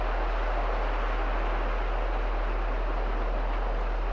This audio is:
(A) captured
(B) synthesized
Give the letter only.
A